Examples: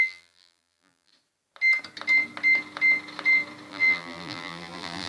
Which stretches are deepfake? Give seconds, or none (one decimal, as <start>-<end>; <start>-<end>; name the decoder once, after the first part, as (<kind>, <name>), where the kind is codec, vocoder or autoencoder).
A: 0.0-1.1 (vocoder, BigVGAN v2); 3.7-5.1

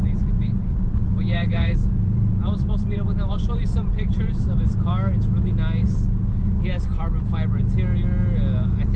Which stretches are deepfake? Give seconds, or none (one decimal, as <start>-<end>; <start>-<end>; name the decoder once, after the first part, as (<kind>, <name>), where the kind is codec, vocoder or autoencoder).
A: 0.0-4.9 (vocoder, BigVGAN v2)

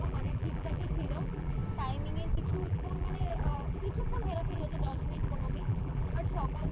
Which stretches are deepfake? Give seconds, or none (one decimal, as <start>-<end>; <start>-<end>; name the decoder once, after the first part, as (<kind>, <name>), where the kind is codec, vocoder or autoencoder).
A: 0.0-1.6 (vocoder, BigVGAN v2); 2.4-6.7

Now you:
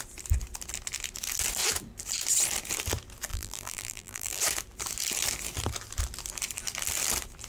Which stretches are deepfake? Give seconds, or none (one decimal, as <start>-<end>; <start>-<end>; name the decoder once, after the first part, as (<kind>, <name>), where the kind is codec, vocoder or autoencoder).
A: 3.3-4.4 (vocoder, BigVGAN v2)

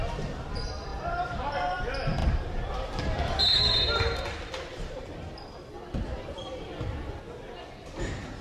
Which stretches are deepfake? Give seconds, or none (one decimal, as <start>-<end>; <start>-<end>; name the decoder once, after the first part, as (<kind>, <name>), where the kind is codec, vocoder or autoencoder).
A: 0.9-1.8 (vocoder, BigVGAN v2); 2.2-7.2